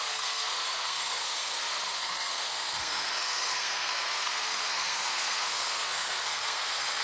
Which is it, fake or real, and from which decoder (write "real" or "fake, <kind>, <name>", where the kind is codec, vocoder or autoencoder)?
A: fake, codec, SNAC